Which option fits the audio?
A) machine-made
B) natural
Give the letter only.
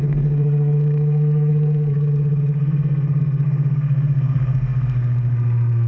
A